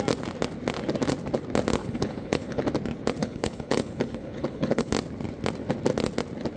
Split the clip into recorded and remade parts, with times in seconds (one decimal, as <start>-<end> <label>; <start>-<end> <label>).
0.0-1.8 recorded; 1.8-2.6 remade; 2.6-3.2 recorded; 3.2-4.9 remade; 4.9-6.6 recorded